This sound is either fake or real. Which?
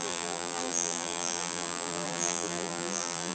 fake